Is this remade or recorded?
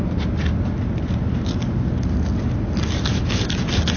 recorded